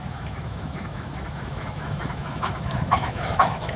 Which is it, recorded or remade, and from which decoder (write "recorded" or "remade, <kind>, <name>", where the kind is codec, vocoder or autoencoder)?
remade, autoencoder, DAC-VAE